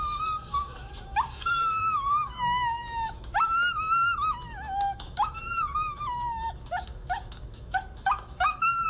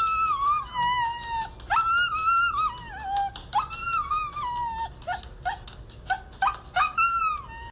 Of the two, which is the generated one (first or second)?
first